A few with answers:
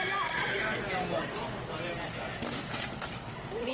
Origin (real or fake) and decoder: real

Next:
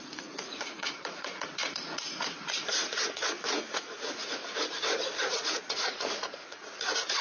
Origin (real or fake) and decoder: fake, vocoder, Vocos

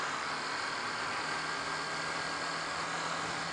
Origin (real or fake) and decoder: real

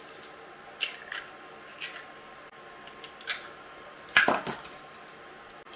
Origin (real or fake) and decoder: real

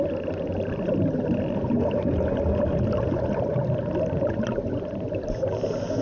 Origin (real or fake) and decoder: real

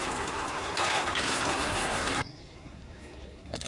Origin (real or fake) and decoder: fake, codec, SNAC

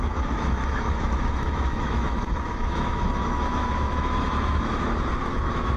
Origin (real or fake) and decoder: fake, autoencoder, DAC-VAE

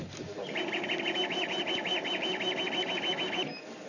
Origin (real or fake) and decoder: real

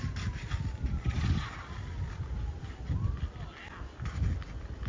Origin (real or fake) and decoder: real